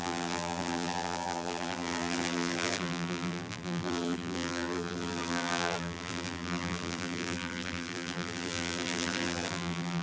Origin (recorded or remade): remade